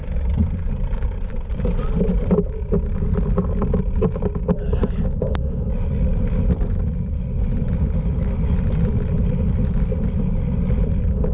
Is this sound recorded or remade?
recorded